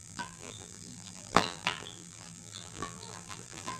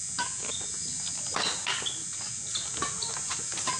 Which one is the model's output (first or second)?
first